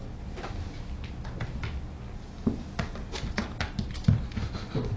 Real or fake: real